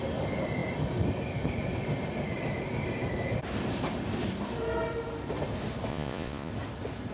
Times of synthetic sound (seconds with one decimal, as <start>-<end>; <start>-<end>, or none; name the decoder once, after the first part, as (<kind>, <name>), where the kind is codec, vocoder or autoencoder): 5.9-6.5 (vocoder, Vocos)